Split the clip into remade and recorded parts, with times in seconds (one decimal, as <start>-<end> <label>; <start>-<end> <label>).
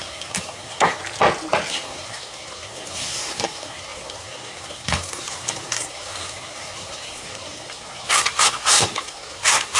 0.0-1.0 remade; 1.0-1.7 recorded; 1.7-9.8 remade